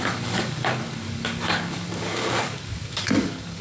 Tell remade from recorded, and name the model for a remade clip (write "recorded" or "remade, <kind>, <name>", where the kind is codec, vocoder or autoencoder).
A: remade, codec, DAC